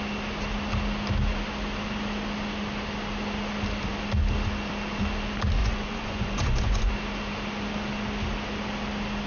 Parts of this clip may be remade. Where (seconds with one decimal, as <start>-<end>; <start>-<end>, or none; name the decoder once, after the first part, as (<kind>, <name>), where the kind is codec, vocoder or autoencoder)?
5.6-6.9 (vocoder, Vocos)